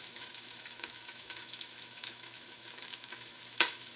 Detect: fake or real fake